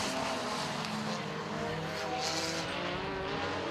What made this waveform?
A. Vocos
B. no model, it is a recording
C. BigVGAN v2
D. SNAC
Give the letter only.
B